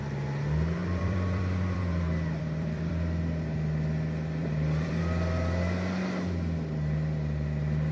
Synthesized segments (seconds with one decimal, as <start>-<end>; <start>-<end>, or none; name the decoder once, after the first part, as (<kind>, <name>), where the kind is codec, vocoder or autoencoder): 0.8-2.9 (vocoder, BigVGAN v2); 4.4-5.0